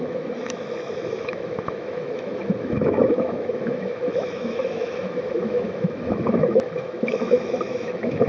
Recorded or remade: remade